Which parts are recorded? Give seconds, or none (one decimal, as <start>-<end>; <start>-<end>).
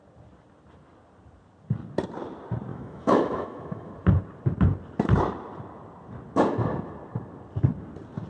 0.0-2.7; 3.9-8.3